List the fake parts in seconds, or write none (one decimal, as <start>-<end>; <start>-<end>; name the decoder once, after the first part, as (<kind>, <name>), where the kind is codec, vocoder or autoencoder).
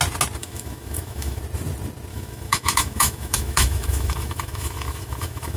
0.4-1.4 (autoencoder, DAC-VAE); 2.1-5.6